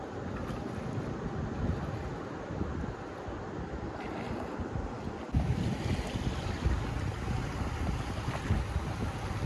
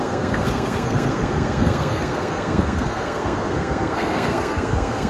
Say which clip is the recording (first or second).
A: first